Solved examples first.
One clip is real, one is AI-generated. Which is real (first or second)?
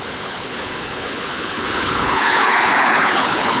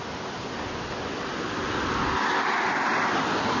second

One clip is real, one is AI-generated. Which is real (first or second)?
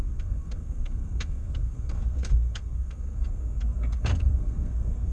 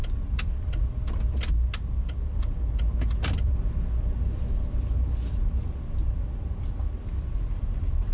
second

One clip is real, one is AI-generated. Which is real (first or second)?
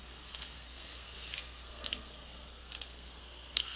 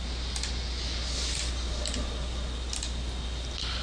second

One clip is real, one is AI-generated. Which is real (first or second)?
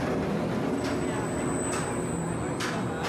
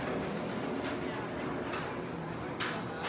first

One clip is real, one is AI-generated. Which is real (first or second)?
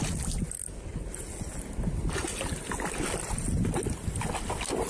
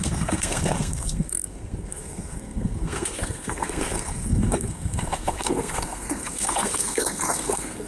first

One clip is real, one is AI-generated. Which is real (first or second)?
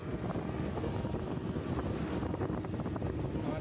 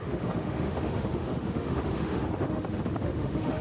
first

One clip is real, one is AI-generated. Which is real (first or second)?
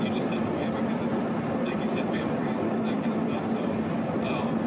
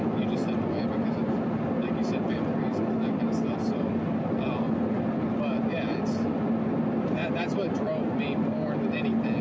second